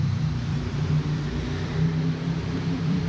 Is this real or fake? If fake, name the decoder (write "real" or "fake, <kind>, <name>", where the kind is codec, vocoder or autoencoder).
fake, vocoder, BigVGAN v2